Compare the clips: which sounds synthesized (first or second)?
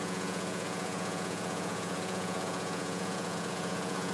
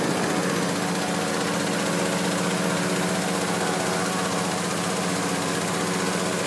first